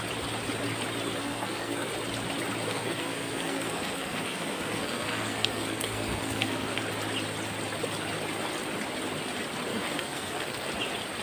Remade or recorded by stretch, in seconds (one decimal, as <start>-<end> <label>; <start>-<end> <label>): 0.0-1.2 recorded; 1.2-1.9 remade; 1.9-2.7 recorded; 2.7-6.8 remade; 6.8-9.7 recorded; 9.7-10.7 remade; 10.7-11.2 recorded

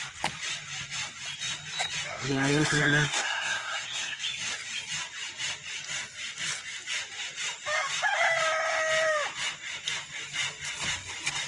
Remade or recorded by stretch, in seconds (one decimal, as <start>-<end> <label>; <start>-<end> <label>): 0.0-2.1 recorded; 2.1-4.2 remade; 4.2-11.5 recorded

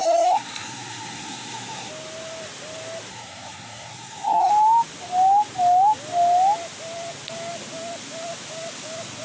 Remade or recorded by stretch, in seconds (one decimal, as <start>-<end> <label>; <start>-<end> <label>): 0.0-1.9 remade; 1.9-3.1 recorded; 3.1-4.5 remade; 4.5-9.2 recorded

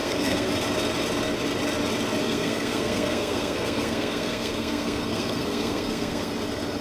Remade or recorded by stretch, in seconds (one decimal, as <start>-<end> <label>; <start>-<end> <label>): 0.0-0.5 remade; 0.5-2.2 recorded; 2.2-6.3 remade; 6.3-6.8 recorded

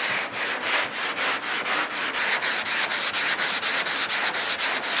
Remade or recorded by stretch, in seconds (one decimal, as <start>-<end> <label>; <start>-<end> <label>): 0.0-5.0 recorded

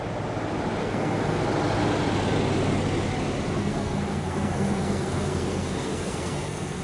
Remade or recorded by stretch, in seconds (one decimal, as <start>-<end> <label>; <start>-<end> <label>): 0.0-0.8 recorded; 0.8-1.4 remade; 1.4-3.6 recorded; 3.6-6.8 remade